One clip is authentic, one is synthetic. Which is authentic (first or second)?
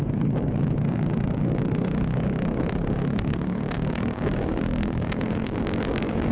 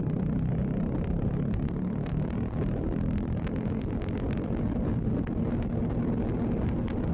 second